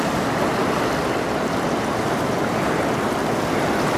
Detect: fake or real real